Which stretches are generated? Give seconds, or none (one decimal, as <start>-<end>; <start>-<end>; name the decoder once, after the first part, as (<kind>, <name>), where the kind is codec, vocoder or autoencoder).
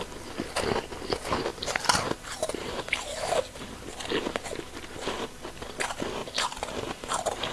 1.5-3.9 (vocoder, BigVGAN v2); 6.2-7.5